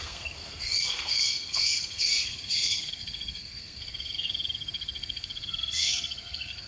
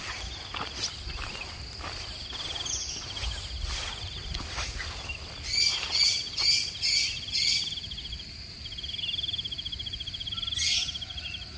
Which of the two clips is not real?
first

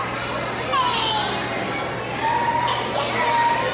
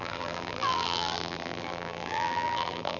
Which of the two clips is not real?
second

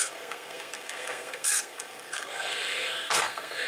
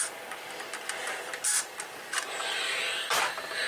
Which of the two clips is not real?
first